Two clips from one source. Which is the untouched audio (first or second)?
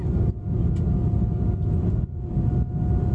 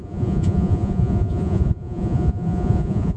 first